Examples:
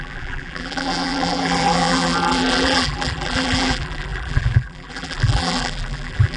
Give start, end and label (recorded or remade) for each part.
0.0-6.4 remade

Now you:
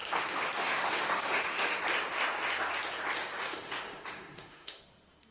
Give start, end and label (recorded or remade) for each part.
0.0-1.8 remade; 1.8-3.2 recorded; 3.2-4.8 remade; 4.8-5.3 recorded

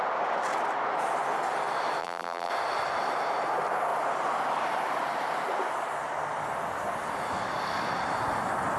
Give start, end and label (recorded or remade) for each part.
0.0-2.0 recorded; 2.0-2.5 remade; 2.5-8.8 recorded

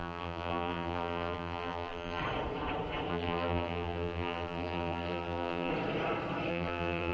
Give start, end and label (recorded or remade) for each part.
0.0-2.2 remade; 2.2-3.1 recorded; 3.1-5.7 remade; 5.7-6.5 recorded; 6.5-7.1 remade

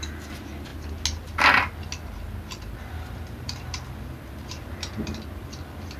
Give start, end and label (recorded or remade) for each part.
0.0-0.7 remade; 0.7-2.8 recorded; 2.8-6.0 remade

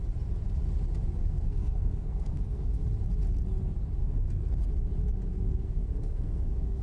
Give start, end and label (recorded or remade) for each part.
0.0-1.2 recorded; 1.2-2.8 remade; 2.8-4.0 recorded; 4.0-4.6 remade; 4.6-5.3 recorded; 5.3-6.8 remade

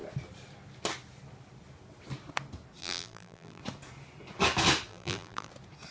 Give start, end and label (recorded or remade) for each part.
0.0-2.8 recorded; 2.8-3.6 remade; 3.6-4.9 recorded; 4.9-5.5 remade; 5.5-5.9 recorded